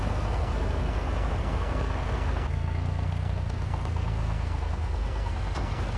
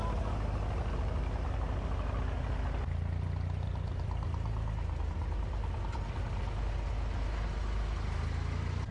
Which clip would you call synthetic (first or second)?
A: first